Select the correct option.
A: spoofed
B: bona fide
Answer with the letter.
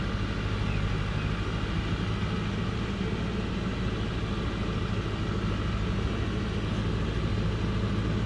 B